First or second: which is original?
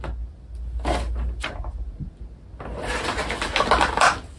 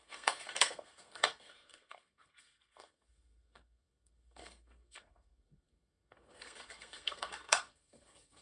first